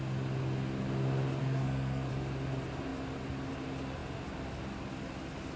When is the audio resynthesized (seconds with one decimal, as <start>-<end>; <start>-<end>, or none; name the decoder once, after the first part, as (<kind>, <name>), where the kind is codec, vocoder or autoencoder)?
1.4-2.1 (codec, SNAC)